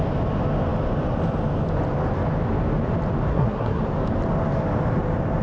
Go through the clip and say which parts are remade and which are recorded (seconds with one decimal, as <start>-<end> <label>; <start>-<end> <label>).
0.0-3.3 recorded; 3.3-3.8 remade; 3.8-5.4 recorded